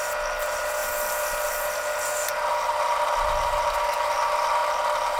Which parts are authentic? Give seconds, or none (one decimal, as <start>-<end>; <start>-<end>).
0.0-5.2